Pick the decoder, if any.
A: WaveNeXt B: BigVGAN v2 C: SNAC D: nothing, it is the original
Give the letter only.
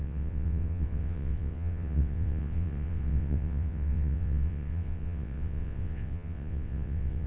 A